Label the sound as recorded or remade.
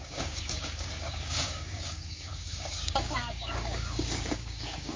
remade